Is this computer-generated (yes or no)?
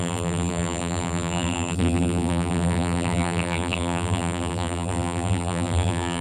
yes